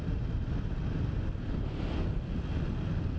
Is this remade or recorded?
recorded